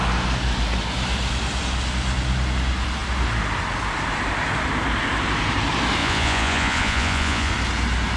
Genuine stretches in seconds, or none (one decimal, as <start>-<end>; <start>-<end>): 0.0-6.0; 7.5-8.2